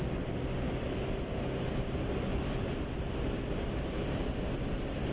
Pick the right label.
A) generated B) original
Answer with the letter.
B